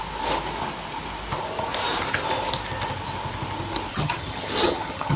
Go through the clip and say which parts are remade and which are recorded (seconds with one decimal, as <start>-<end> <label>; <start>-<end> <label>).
0.0-3.9 recorded; 3.9-5.2 remade